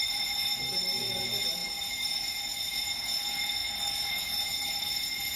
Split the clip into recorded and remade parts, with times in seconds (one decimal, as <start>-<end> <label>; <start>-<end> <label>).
0.0-0.5 remade; 0.5-1.0 recorded; 1.0-5.4 remade